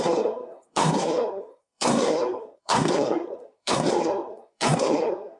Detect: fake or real fake